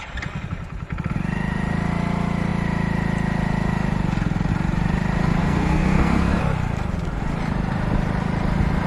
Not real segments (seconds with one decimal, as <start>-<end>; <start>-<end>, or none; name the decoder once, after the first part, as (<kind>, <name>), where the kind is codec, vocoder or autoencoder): 5.4-6.4 (codec, SNAC)